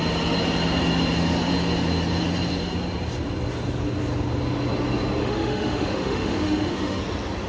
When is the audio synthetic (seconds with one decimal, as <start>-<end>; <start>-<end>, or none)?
5.2-7.0